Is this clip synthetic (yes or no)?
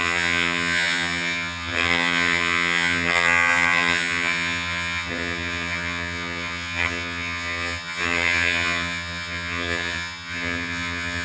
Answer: yes